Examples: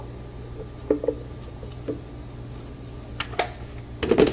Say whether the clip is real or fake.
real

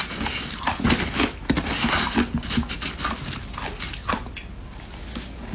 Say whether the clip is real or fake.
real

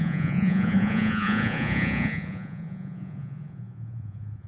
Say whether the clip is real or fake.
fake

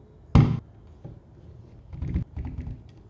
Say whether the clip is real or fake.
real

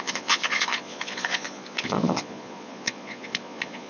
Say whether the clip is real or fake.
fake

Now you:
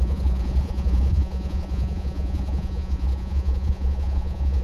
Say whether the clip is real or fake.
fake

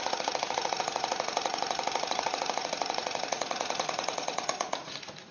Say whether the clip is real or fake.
fake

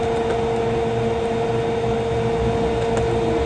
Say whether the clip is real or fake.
real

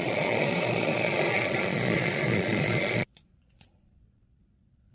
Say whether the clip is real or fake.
fake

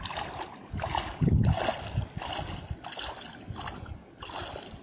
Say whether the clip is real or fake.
real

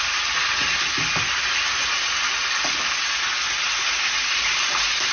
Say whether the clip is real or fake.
real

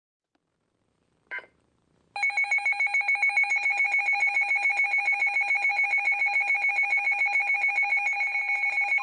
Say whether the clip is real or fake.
real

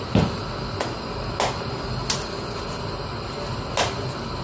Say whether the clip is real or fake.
real